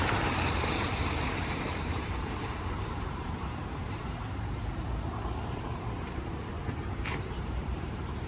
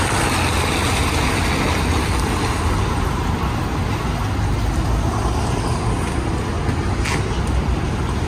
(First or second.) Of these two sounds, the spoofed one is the first